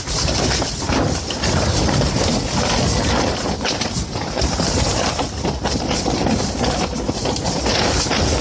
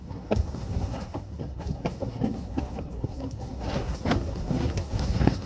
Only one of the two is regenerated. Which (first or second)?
second